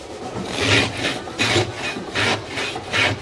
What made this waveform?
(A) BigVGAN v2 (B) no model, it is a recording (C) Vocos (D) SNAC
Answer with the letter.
B